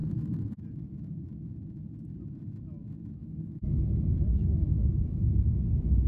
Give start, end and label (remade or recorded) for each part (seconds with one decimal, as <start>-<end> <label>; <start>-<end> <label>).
0.0-0.6 remade; 0.6-3.2 recorded; 3.2-3.9 remade; 3.9-4.3 recorded; 4.3-6.1 remade